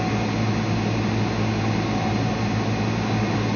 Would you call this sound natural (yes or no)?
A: yes